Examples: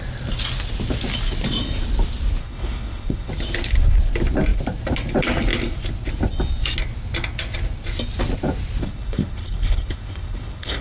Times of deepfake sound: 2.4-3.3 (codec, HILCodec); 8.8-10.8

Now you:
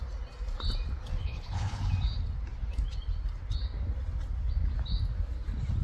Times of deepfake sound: 1.2-1.8 (codec, HILCodec)

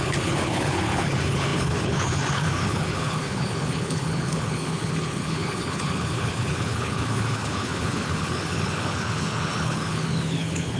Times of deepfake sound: 0.0-10.8 (codec, HILCodec)

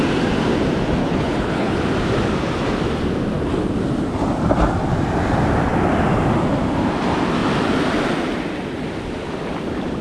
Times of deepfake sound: 1.0-1.8 (codec, HILCodec)